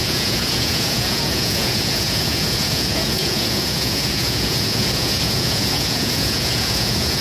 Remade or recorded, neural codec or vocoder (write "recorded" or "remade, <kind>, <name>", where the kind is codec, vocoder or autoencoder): remade, vocoder, Vocos